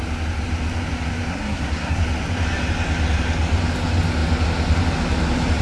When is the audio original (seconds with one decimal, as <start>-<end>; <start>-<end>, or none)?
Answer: 0.0-1.3; 2.0-5.6